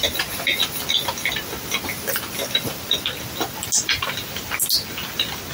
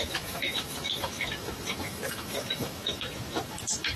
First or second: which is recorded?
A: first